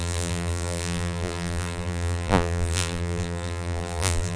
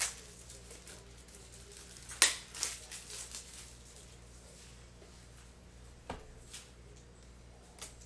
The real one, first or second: second